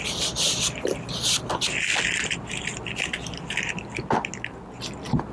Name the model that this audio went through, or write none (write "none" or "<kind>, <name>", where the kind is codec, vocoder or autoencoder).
none